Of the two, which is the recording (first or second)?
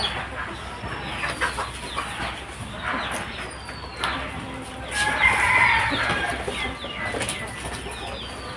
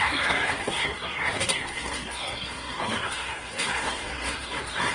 first